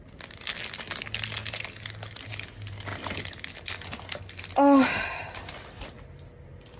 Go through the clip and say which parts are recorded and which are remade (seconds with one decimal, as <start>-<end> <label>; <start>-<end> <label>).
0.0-6.8 recorded